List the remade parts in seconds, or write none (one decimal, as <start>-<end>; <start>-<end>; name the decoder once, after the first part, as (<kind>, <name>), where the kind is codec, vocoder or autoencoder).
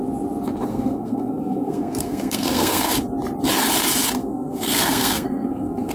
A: 0.7-2.9 (codec, SNAC); 4.2-5.9